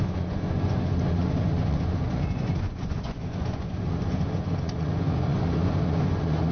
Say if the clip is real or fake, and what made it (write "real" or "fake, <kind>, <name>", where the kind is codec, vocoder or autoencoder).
fake, vocoder, Vocos